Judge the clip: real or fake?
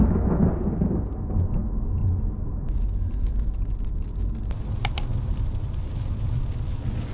real